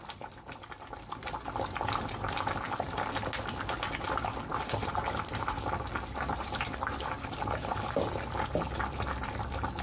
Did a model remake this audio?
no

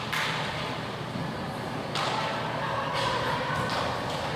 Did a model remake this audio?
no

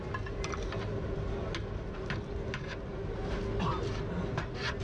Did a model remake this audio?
no